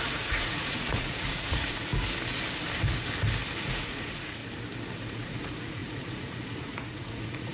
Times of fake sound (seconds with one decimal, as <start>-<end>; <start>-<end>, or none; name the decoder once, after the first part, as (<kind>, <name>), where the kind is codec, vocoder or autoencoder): 0.0-1.9 (vocoder, Vocos); 3.6-4.4; 5.0-7.5